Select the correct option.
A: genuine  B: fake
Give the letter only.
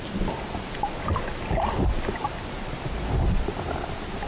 A